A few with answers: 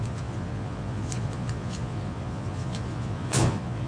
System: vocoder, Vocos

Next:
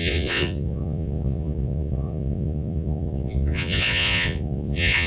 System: vocoder, Vocos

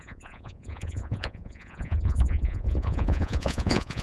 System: vocoder, Vocos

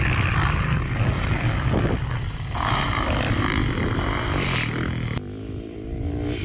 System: none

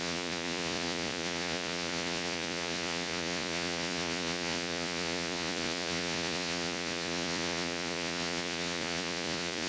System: vocoder, Vocos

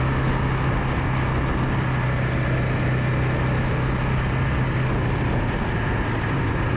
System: none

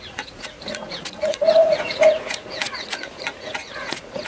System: vocoder, Vocos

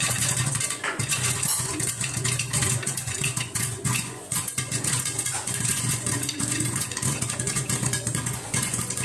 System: vocoder, Vocos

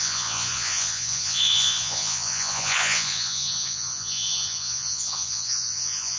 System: vocoder, Vocos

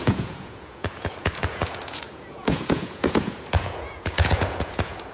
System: vocoder, Vocos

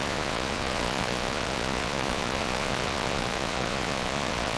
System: vocoder, Vocos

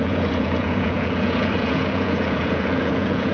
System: vocoder, Vocos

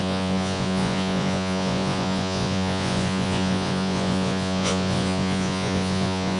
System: vocoder, Vocos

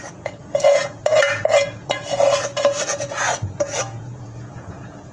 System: vocoder, Vocos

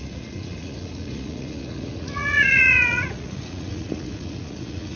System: vocoder, Vocos